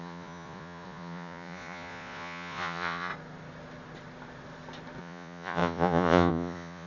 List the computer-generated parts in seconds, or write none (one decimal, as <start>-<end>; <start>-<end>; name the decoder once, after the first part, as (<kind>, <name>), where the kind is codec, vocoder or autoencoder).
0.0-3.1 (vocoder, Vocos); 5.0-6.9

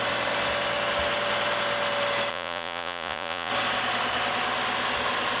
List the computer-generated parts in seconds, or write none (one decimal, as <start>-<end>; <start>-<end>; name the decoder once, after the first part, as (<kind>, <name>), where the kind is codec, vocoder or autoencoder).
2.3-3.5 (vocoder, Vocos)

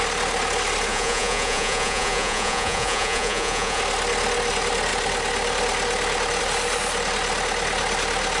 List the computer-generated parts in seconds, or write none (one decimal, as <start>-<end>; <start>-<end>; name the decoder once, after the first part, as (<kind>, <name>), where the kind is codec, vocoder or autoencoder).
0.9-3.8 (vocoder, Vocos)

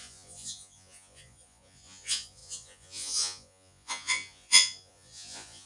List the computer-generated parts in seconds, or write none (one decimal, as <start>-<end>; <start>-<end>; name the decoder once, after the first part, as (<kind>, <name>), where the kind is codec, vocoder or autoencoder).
0.0-5.7 (vocoder, Vocos)

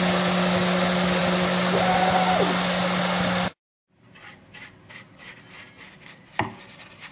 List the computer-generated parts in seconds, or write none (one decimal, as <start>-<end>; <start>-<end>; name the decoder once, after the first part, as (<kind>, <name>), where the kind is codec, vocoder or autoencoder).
none

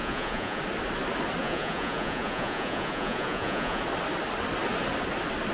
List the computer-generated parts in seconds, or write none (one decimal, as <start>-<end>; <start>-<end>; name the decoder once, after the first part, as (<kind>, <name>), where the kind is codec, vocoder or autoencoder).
0.0-0.6 (vocoder, Vocos); 1.4-3.8

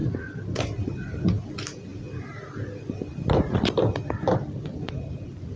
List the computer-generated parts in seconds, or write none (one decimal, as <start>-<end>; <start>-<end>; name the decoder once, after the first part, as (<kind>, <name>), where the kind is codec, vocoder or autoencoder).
none

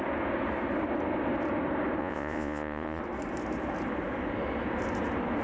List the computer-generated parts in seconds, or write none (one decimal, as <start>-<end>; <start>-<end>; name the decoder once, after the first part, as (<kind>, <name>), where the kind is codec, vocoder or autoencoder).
2.0-3.0 (vocoder, Vocos)